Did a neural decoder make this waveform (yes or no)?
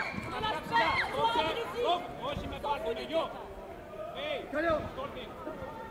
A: yes